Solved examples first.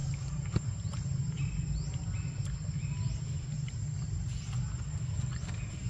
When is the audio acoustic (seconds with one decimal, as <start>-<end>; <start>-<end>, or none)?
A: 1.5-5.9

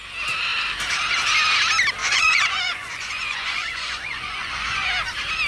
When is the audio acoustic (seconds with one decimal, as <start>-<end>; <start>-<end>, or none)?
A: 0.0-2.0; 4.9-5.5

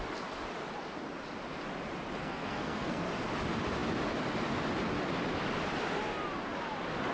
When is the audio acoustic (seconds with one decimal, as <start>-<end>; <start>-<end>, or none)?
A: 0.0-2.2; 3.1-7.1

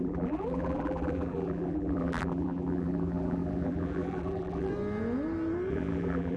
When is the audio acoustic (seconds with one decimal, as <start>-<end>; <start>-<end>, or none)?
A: 4.7-5.7

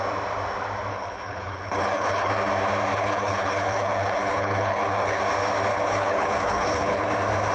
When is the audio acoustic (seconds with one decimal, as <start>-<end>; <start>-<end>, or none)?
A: 0.0-0.9; 2.3-2.9; 5.2-5.7; 7.1-7.5

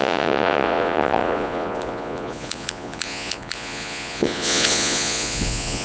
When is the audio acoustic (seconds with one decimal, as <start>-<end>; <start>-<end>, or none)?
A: none

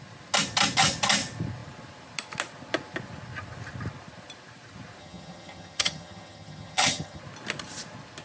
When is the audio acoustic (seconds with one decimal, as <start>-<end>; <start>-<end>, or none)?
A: 0.0-5.0; 7.2-8.2

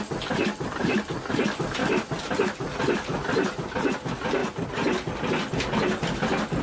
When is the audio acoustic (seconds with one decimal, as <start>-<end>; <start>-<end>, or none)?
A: 0.0-1.8; 3.7-6.6